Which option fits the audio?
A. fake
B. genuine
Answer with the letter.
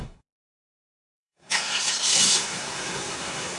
A